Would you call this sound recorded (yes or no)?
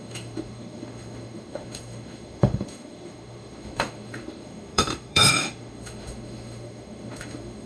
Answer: no